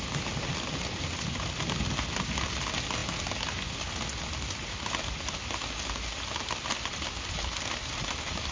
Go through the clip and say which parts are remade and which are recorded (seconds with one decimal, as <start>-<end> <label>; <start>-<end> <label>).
0.0-8.5 recorded